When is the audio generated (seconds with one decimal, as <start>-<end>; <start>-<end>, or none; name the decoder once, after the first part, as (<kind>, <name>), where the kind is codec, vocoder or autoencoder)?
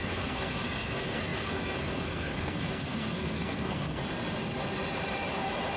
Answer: 0.0-4.0 (codec, SNAC)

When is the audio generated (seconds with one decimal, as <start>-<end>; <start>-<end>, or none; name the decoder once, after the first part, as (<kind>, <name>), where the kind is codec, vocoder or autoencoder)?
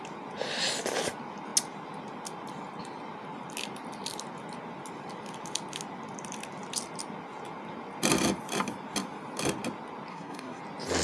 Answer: 10.1-10.6 (codec, SNAC)